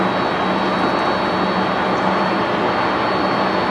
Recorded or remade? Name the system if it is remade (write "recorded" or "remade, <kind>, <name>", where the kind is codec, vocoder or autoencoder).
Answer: recorded